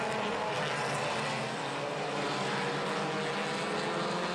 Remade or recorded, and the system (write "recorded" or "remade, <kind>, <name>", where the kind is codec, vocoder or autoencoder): recorded